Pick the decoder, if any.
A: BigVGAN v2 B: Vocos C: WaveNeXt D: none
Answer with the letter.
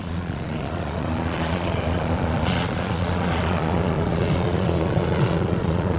B